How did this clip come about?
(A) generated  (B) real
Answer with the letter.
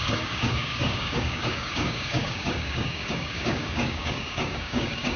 A